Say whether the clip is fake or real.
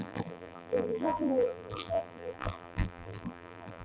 fake